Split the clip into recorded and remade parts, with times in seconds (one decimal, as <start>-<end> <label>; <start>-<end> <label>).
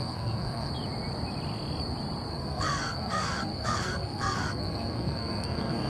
0.0-0.7 remade; 0.7-2.3 recorded; 2.3-5.9 remade